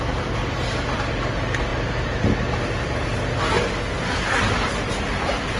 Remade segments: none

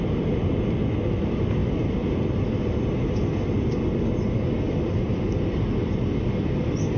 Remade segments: none

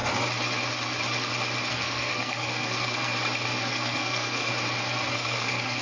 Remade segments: 1.7-3.1; 3.7-4.5; 5.1-5.8